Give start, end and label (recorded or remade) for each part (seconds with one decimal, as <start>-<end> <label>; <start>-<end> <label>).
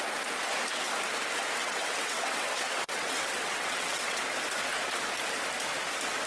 0.0-1.6 recorded; 1.6-4.2 remade; 4.2-6.3 recorded